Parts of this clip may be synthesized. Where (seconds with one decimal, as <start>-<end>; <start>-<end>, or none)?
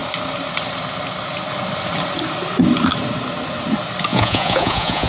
4.1-5.1